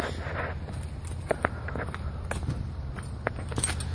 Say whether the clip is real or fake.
real